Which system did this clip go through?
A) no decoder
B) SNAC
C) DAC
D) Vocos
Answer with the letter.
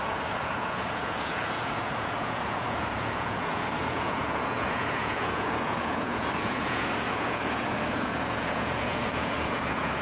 D